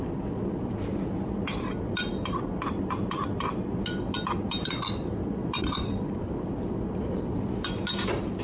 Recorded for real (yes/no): yes